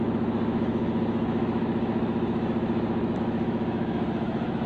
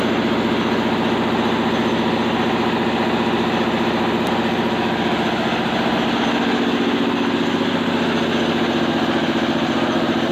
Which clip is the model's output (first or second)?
first